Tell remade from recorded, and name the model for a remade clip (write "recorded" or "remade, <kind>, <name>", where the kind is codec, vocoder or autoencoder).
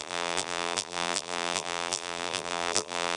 remade, vocoder, BigVGAN v2